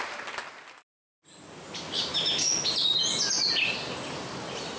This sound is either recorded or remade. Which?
recorded